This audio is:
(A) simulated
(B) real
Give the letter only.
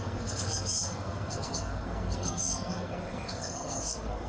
A